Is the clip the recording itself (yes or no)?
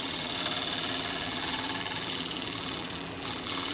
no